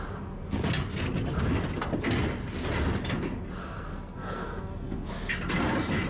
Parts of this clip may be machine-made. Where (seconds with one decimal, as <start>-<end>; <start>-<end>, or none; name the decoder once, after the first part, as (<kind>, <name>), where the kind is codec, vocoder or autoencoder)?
3.6-5.1 (codec, SNAC)